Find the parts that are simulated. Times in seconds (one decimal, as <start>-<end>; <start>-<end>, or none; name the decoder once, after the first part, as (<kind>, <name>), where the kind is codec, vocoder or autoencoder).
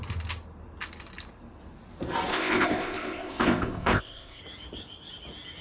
2.3-4.4 (codec, ZipCodec)